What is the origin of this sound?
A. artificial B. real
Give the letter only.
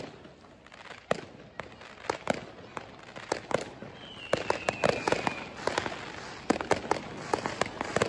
B